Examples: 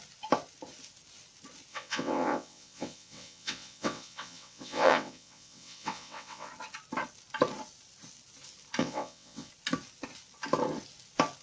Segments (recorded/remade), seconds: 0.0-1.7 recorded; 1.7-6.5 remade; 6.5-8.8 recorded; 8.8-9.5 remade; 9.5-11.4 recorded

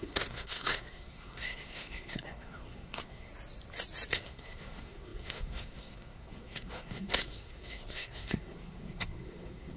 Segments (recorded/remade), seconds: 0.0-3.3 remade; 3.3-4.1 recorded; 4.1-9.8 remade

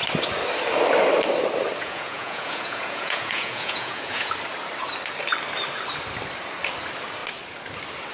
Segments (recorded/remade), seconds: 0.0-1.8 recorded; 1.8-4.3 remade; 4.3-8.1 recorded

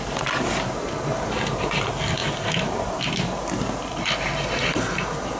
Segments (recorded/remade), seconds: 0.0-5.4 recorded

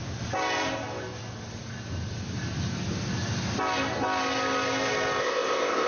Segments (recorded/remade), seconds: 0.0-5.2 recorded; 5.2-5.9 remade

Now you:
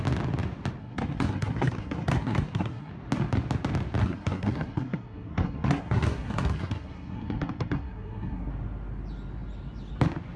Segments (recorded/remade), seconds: 0.0-0.8 recorded; 0.8-2.9 remade; 2.9-4.0 recorded; 4.0-8.5 remade; 8.5-10.4 recorded

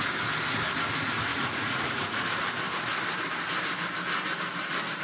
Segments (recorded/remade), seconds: 0.0-1.3 recorded; 1.3-2.2 remade; 2.2-5.0 recorded